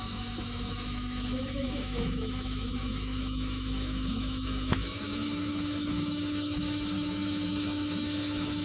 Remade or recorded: remade